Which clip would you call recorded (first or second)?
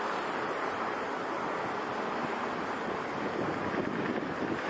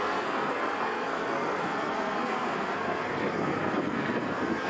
first